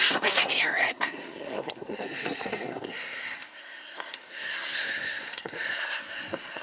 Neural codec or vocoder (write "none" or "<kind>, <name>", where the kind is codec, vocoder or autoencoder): codec, SNAC